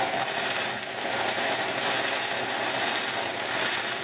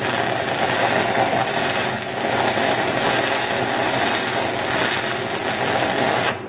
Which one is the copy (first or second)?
first